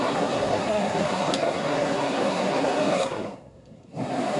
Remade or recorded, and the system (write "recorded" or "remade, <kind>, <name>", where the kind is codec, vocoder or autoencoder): remade, codec, SNAC